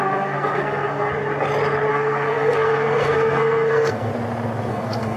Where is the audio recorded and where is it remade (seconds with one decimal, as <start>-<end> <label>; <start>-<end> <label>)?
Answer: 0.0-1.1 remade; 1.1-1.9 recorded; 1.9-4.1 remade; 4.1-4.7 recorded; 4.7-5.2 remade